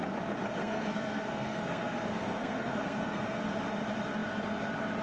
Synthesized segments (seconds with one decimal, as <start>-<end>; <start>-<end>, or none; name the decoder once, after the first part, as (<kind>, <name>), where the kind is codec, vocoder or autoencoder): 0.6-3.2 (codec, SNAC)